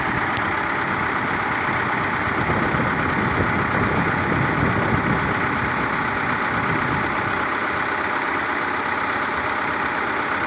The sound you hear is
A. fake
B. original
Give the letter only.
B